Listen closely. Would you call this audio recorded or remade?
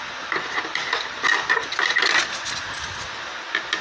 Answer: recorded